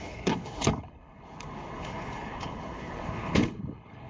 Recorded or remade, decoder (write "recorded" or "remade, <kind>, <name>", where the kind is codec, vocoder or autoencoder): remade, codec, HILCodec